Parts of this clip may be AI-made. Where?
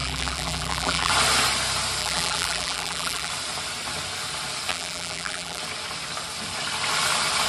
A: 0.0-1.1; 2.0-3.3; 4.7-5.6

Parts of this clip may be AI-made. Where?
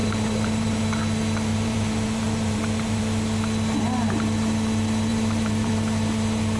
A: 0.0-0.8; 1.5-3.0; 5.1-5.7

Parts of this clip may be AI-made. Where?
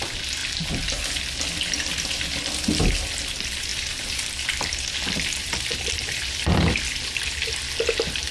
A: none